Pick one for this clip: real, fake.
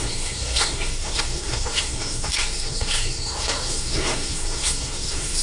fake